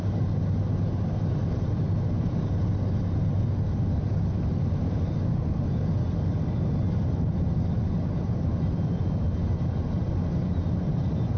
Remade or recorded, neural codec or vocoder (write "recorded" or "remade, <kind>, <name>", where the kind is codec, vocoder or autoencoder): recorded